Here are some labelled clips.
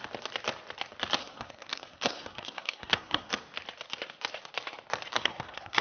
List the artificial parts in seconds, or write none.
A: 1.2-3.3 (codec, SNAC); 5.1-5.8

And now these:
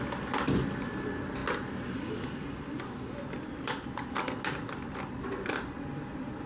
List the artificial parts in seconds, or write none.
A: none